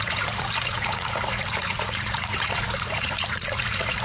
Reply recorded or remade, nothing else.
remade